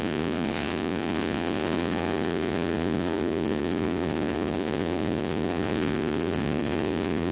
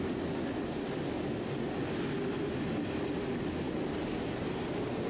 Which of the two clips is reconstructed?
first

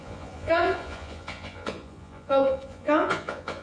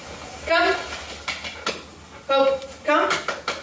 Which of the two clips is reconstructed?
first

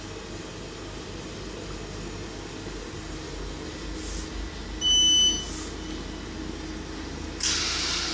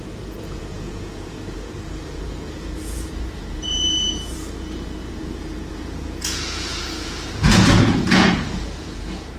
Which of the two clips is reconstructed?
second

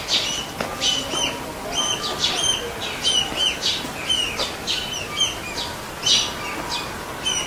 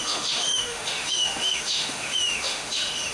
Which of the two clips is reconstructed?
second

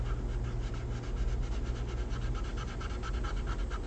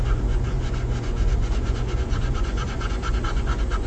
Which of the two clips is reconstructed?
second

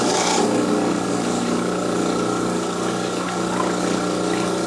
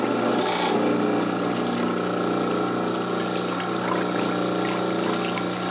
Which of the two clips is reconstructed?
first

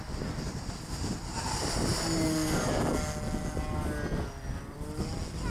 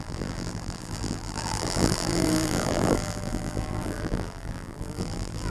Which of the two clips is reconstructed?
second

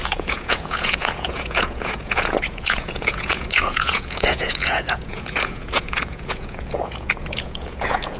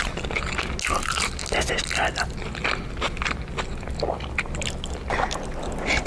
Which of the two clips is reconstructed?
first